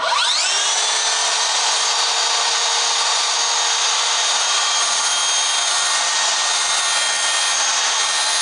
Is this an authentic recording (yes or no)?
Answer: yes